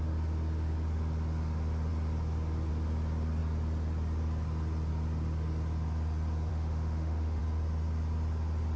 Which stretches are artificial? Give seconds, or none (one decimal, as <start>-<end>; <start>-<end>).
6.5-7.4